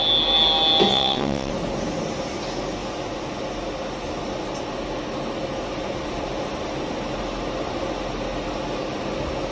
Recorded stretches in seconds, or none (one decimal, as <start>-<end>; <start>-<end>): 0.0-0.9; 1.5-9.5